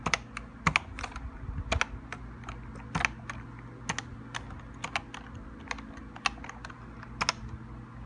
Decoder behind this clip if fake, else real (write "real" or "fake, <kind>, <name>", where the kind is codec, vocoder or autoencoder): real